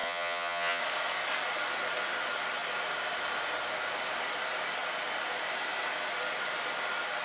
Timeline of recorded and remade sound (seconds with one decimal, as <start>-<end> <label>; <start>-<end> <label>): 0.0-0.8 remade; 0.8-7.2 recorded